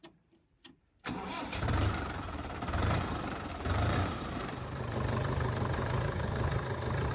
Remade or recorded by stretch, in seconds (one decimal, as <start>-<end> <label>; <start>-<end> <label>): 0.0-6.5 remade; 6.5-7.1 recorded